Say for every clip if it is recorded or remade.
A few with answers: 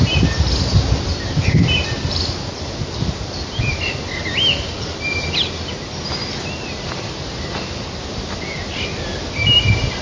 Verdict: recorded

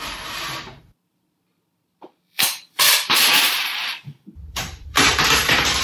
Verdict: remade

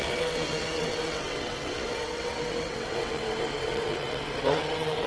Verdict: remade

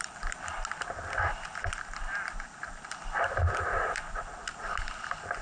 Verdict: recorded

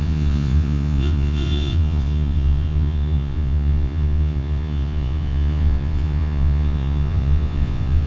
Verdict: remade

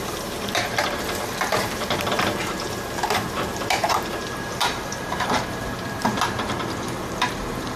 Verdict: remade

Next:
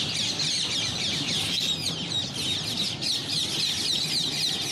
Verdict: recorded